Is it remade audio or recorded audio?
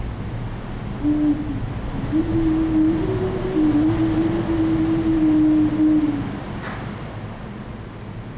recorded